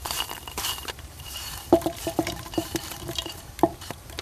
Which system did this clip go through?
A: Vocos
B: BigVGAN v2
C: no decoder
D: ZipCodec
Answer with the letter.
B